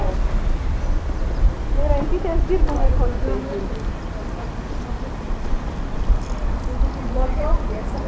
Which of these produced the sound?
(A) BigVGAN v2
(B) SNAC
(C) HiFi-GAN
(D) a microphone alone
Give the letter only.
D